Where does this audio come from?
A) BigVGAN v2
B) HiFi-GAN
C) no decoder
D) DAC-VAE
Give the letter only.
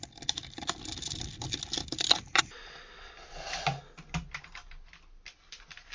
C